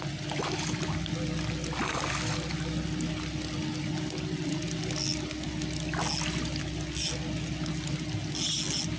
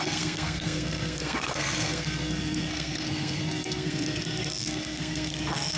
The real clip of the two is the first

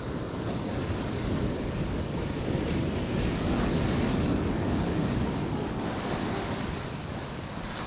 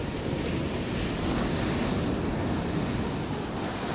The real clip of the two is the second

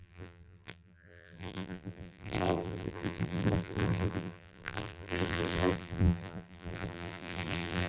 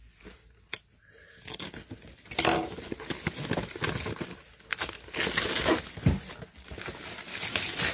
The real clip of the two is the second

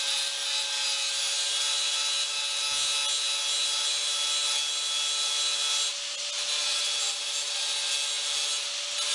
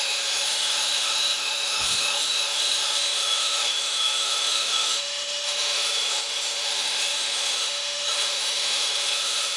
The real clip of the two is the first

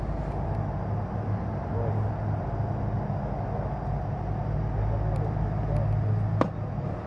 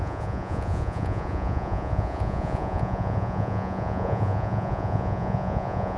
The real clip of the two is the first